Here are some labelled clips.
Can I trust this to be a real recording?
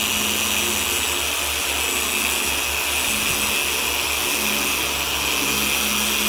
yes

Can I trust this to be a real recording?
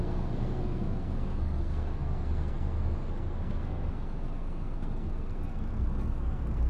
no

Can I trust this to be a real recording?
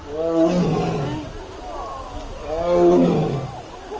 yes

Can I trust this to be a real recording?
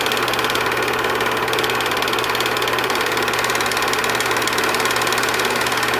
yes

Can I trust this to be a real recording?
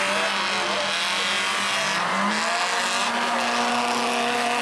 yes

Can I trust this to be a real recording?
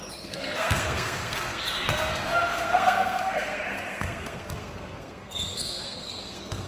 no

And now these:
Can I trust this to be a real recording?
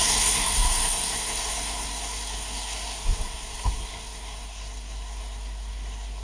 no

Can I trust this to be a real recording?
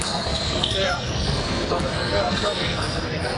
no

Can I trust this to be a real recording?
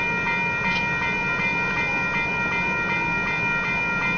yes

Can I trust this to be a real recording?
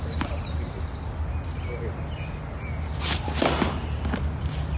yes